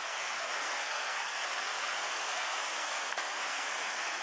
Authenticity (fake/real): fake